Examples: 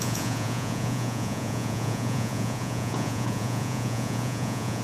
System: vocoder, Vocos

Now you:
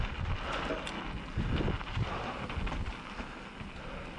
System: none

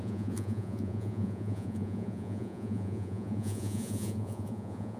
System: vocoder, Vocos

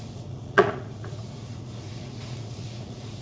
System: vocoder, Vocos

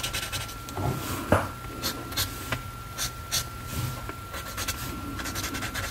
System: none